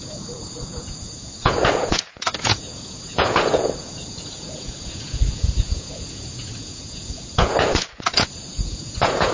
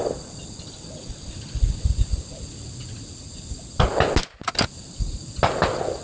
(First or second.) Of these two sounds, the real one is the second